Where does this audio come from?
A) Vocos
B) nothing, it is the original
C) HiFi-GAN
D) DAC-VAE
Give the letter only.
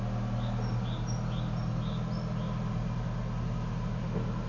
B